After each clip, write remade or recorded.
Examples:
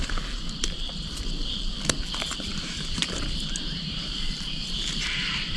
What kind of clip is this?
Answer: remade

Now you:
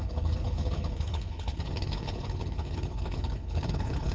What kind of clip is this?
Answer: remade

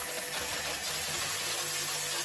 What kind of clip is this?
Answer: recorded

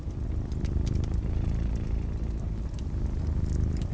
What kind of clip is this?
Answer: recorded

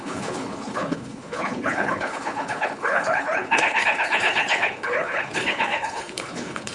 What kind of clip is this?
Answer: remade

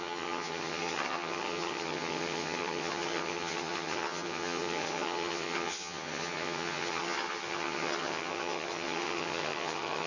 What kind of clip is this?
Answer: remade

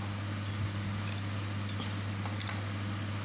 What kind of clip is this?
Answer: recorded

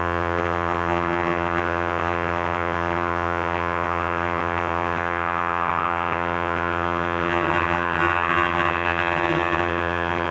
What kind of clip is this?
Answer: remade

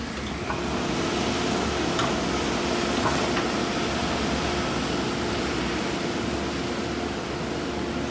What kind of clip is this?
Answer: recorded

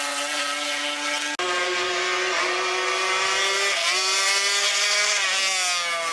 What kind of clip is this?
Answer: recorded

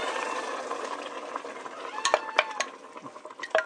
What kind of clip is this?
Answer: remade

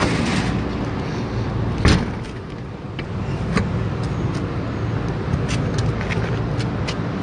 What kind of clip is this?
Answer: recorded